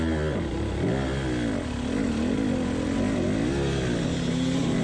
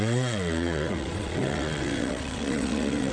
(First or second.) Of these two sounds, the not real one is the second